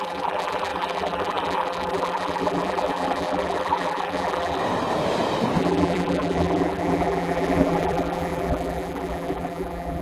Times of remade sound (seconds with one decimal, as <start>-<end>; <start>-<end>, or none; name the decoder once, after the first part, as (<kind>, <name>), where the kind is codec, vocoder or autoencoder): 0.0-4.6 (vocoder, BigVGAN v2); 5.6-10.0